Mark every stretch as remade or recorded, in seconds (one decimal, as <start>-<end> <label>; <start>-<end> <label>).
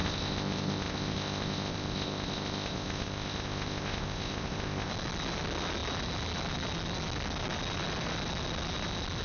0.0-4.9 remade; 4.9-9.2 recorded